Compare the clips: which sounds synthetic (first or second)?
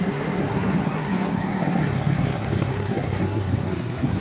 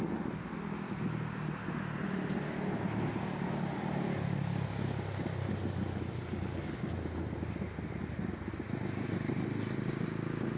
first